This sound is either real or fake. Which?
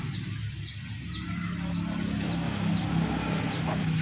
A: real